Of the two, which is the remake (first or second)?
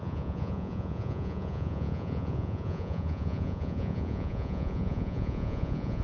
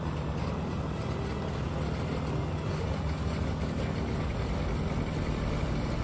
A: first